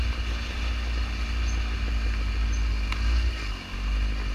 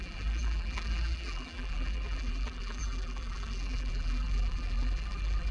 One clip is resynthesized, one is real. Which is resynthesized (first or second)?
second